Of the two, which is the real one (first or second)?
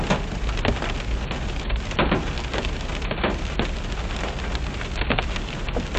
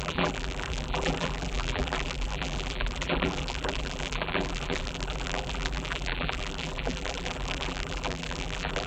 first